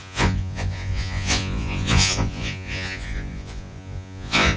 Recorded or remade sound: remade